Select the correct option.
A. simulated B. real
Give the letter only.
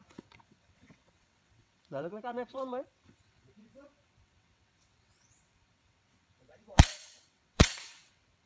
A